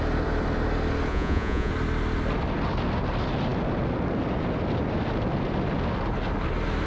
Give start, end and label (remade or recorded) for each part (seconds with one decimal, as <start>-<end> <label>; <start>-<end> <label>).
0.0-1.1 recorded; 1.1-1.7 remade; 1.7-6.9 recorded